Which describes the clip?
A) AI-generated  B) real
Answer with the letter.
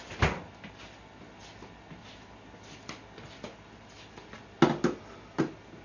B